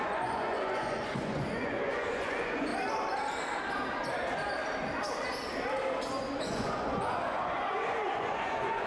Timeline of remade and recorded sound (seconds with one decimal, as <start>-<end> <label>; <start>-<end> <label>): 0.0-2.7 remade; 2.7-6.4 recorded; 6.4-8.9 remade